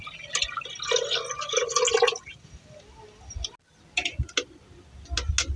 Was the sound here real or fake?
real